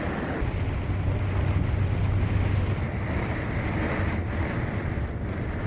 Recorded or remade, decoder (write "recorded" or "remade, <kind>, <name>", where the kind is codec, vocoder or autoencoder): recorded